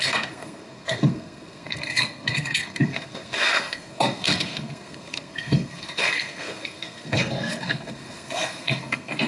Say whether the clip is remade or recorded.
remade